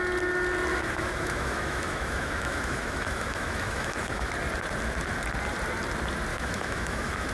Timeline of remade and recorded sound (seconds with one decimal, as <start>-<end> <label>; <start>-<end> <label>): 0.0-0.7 recorded; 0.7-4.3 remade; 4.3-6.3 recorded; 6.3-7.3 remade